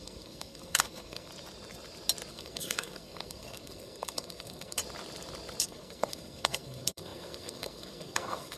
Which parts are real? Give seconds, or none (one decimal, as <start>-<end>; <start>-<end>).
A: 1.3-2.3; 4.8-5.6